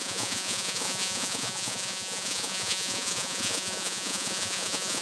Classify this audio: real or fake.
fake